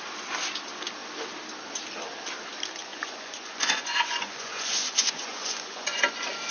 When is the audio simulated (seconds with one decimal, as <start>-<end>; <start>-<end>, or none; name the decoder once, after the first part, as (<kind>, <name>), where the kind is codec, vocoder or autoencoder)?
2.9-6.0 (vocoder, Vocos)

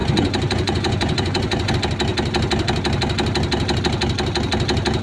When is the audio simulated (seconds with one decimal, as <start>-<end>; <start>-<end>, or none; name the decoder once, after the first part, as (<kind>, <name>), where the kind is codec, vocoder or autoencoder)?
0.0-1.7 (vocoder, Vocos)

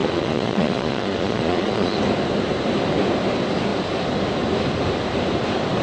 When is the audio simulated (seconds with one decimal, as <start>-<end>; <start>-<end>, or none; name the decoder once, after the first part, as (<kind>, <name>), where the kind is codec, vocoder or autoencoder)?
0.0-2.0 (vocoder, Vocos)

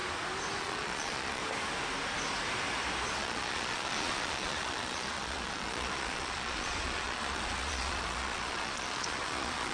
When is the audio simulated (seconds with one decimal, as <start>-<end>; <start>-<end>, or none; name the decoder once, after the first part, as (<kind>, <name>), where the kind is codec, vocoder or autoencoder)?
0.6-1.4 (vocoder, Vocos); 3.2-9.7

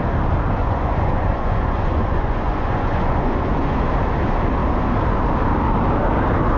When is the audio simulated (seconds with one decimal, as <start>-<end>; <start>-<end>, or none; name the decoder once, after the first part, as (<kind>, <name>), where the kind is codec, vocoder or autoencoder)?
0.6-3.8 (vocoder, Vocos)

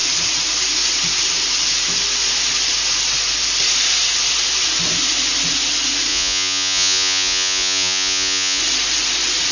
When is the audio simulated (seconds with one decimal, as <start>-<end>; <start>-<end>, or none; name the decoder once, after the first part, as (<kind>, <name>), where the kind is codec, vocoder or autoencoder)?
6.1-8.6 (vocoder, Vocos)

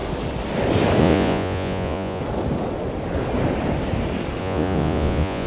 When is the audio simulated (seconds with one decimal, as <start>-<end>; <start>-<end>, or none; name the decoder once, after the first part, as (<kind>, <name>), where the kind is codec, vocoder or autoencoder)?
1.0-2.2 (vocoder, Vocos); 4.4-5.5

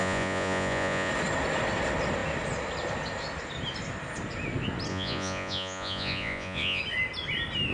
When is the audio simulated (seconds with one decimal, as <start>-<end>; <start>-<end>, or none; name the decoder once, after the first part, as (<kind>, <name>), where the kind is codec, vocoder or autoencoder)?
0.0-1.1 (vocoder, Vocos); 4.9-6.8